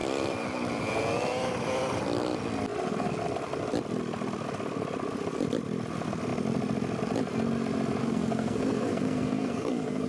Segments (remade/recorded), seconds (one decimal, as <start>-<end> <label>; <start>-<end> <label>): 0.0-8.0 recorded; 8.0-10.1 remade